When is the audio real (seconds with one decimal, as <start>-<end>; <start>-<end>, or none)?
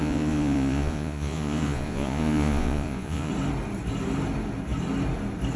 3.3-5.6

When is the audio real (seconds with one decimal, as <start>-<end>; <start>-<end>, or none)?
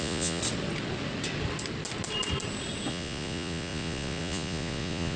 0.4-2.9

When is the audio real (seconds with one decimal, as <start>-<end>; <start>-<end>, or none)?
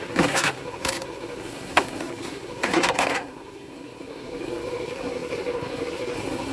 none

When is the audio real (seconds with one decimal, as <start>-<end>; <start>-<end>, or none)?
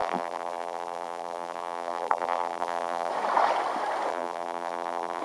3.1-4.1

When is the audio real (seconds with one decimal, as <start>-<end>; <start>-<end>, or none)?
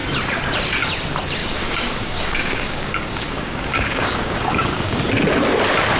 0.0-1.4; 5.0-6.0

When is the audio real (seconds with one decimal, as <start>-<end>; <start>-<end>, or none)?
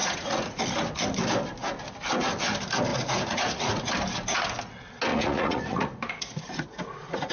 0.6-2.9; 3.9-5.1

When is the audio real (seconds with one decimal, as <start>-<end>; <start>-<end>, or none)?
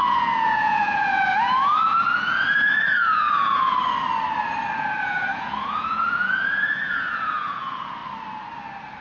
3.8-5.0; 8.0-9.0